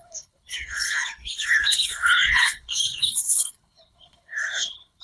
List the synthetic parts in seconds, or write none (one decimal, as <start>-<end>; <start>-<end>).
0.0-5.0